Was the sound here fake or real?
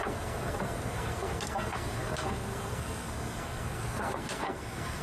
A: fake